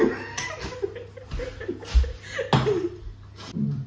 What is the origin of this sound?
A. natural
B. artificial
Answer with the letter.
A